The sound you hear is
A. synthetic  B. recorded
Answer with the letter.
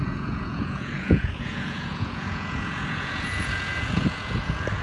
A